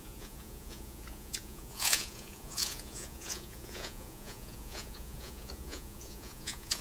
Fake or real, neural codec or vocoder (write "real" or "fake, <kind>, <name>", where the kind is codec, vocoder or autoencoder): fake, vocoder, Vocos